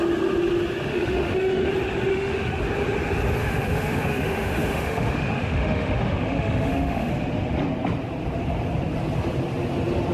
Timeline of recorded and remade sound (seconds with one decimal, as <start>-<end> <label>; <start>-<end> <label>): 0.0-0.9 recorded; 0.9-1.7 remade; 1.7-2.1 recorded; 2.1-2.6 remade; 2.6-3.4 recorded; 3.4-7.1 remade; 7.1-10.1 recorded

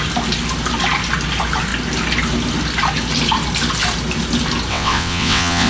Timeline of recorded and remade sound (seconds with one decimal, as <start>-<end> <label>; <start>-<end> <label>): 0.0-4.7 recorded; 4.7-5.7 remade